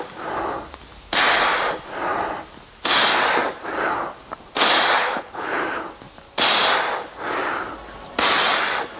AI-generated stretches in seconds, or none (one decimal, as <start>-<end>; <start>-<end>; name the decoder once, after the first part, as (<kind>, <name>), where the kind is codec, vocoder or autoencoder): 5.0-5.6 (codec, HILCodec)